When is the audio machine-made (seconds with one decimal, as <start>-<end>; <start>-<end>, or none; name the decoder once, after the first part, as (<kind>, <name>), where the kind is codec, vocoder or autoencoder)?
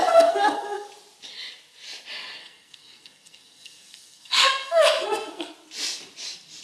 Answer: 0.0-0.9 (codec, SNAC); 2.4-5.5